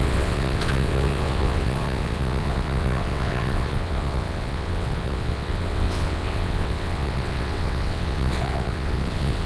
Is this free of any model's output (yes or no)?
no